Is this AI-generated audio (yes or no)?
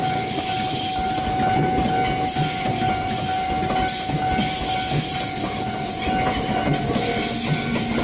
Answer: no